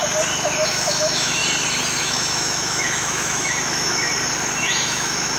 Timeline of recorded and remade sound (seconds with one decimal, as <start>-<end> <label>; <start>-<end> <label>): 0.0-0.7 recorded; 0.7-1.4 remade; 1.4-2.0 recorded; 2.0-4.1 remade; 4.1-4.6 recorded; 4.6-5.4 remade